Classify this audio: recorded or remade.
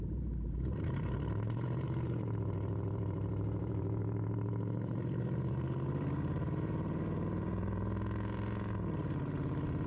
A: remade